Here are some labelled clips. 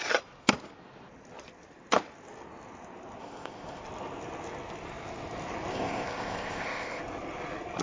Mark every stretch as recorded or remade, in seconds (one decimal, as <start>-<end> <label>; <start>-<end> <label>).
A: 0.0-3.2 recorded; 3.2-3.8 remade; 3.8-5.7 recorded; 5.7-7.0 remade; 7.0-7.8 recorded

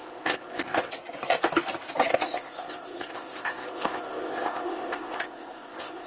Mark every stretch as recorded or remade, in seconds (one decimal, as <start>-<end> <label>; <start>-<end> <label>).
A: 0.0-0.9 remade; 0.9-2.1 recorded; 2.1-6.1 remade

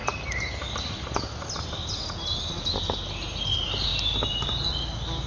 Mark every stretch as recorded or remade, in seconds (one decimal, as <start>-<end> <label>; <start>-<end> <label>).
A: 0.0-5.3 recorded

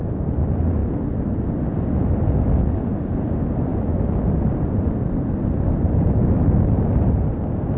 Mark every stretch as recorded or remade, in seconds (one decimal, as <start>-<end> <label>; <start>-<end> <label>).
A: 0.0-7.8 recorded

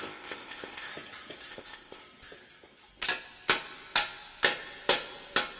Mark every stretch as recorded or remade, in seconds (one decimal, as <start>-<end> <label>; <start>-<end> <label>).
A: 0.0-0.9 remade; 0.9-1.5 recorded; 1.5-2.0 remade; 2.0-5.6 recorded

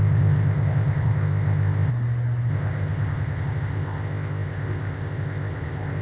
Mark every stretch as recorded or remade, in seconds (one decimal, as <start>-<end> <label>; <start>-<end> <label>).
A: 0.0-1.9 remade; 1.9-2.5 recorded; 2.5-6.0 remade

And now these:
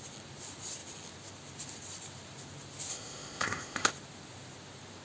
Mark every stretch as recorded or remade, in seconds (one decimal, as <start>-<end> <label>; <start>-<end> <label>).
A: 0.0-2.9 recorded; 2.9-3.9 remade; 3.9-5.0 recorded